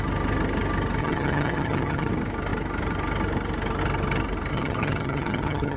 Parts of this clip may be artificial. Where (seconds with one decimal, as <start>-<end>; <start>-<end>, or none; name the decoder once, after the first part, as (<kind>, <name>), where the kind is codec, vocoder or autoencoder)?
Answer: 1.0-2.1 (vocoder, HiFi-GAN); 4.5-5.8